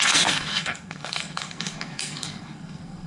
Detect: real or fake fake